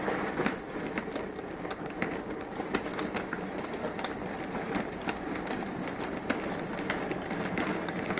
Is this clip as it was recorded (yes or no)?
yes